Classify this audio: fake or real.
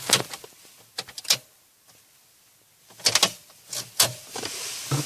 real